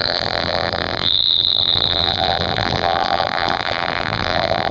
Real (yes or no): no